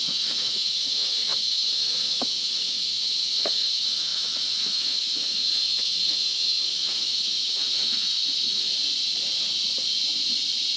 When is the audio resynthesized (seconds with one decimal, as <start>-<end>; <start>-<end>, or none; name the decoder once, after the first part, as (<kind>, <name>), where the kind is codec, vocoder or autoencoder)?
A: 0.0-8.7 (autoencoder, DAC-VAE)